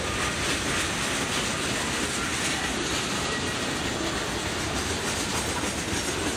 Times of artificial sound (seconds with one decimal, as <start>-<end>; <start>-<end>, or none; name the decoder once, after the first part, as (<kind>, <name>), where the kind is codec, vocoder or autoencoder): none